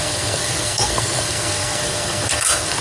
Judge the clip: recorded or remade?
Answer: remade